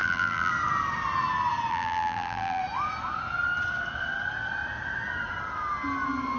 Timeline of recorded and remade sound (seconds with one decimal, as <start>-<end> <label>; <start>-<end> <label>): 0.0-0.5 remade; 0.5-1.7 recorded; 1.7-2.6 remade; 2.6-6.4 recorded